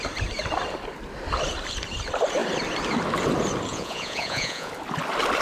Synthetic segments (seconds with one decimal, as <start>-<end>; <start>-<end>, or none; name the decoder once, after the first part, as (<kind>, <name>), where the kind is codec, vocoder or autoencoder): 3.7-4.7 (vocoder, Vocos)